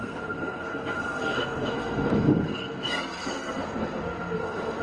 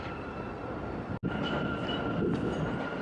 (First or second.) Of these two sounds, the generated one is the first